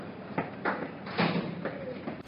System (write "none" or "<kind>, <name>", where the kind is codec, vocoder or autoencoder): vocoder, BigVGAN v2